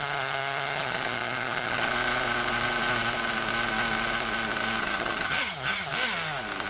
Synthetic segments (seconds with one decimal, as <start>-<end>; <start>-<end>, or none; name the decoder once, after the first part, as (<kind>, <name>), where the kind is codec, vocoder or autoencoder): 0.0-1.9 (vocoder, HiFi-GAN); 4.8-5.9